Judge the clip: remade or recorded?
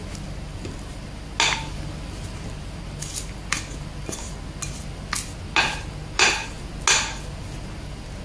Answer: recorded